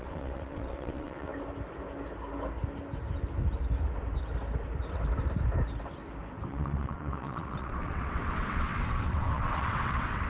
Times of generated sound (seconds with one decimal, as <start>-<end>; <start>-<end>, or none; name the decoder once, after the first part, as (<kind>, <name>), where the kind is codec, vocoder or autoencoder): 0.0-1.3 (vocoder, WaveNeXt); 6.5-10.3